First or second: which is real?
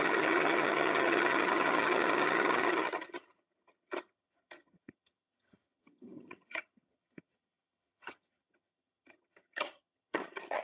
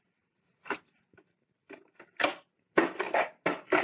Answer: second